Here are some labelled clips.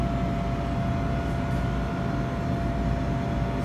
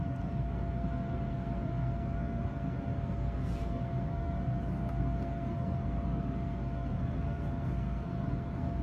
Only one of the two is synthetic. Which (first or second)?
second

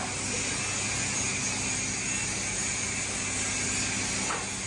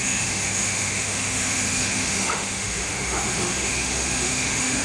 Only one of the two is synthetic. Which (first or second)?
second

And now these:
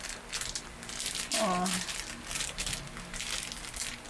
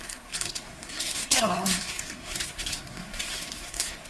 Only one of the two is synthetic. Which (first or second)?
second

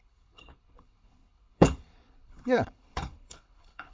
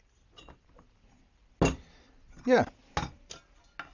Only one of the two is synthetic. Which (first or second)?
first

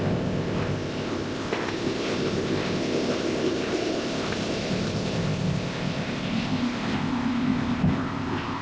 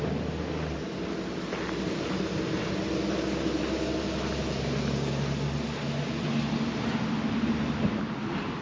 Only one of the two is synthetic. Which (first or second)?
first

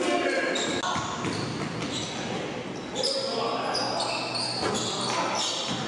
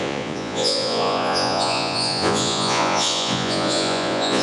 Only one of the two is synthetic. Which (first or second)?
second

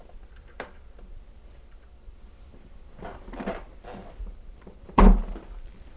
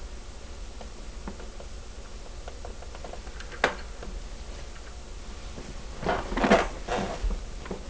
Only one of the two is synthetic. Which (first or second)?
first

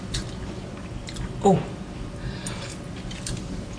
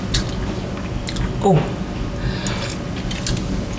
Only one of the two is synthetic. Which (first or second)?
first